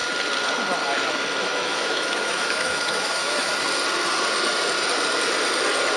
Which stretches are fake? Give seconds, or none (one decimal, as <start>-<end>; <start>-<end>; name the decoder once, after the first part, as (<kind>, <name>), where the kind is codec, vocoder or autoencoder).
1.4-3.5 (autoencoder, DAC-VAE)